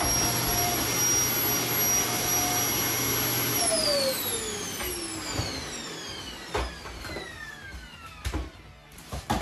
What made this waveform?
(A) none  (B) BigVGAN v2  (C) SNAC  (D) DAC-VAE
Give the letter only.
A